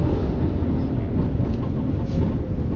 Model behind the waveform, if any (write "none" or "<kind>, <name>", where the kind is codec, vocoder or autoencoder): none